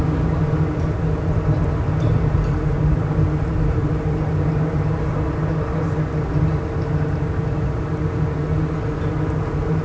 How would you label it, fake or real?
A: real